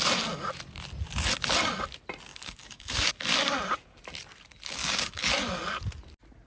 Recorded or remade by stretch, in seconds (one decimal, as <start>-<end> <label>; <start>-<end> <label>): 0.0-2.3 recorded; 2.3-3.1 remade; 3.1-4.8 recorded; 4.8-5.3 remade; 5.3-6.5 recorded